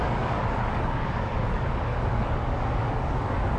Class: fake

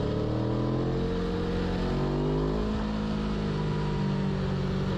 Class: real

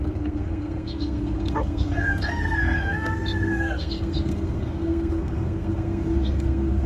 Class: fake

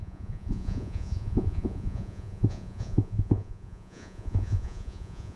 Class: fake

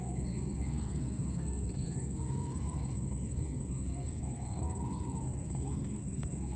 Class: fake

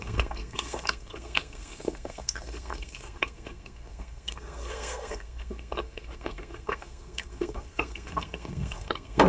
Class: fake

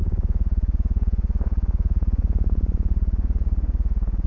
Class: fake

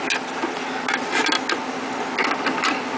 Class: real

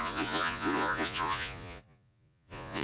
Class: fake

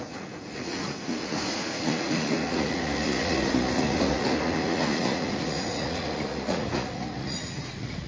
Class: fake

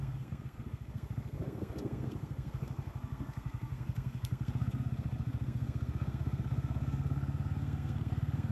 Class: fake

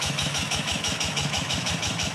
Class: fake